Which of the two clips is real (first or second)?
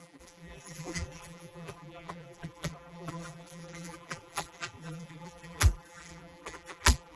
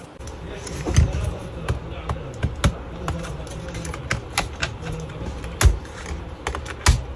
second